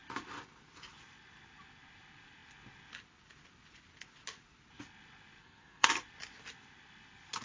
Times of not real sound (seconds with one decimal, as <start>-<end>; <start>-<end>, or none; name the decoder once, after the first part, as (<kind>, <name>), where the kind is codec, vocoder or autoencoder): 5.4-5.9 (codec, SNAC)